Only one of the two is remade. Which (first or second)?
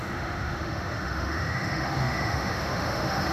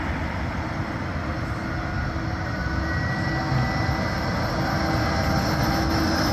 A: first